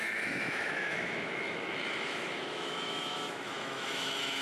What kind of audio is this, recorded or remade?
remade